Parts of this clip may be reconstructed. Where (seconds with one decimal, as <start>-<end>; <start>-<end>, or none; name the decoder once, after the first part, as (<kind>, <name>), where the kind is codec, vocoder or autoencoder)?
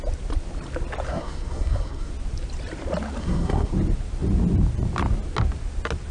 1.1-2.1 (codec, SNAC); 3.2-3.7